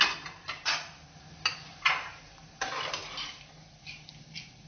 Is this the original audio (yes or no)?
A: yes